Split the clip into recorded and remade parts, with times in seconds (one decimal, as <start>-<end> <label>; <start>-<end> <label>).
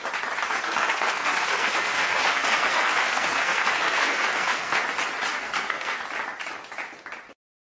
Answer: 0.0-0.5 recorded; 0.5-4.8 remade; 4.8-5.3 recorded; 5.3-6.0 remade; 6.0-7.7 recorded